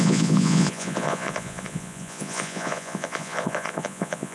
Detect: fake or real fake